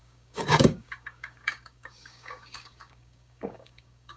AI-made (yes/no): yes